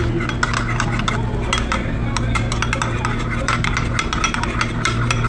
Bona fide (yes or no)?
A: yes